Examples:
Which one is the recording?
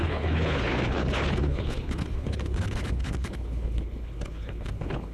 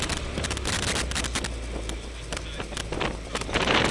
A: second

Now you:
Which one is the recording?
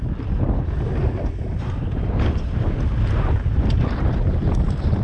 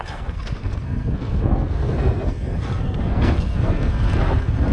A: first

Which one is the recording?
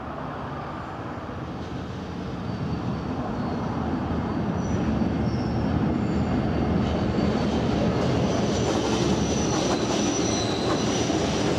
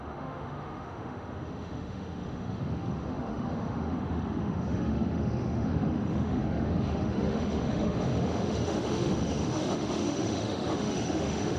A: first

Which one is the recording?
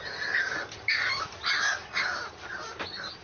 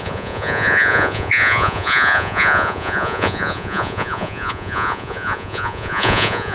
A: first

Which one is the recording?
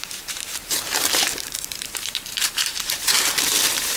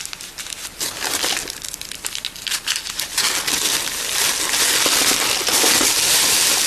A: second